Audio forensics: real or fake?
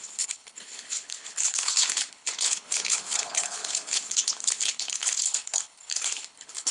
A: fake